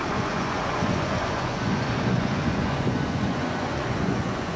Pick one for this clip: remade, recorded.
remade